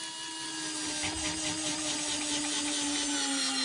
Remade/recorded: recorded